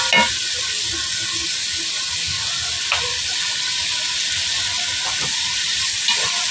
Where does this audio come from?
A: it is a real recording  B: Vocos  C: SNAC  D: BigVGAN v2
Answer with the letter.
A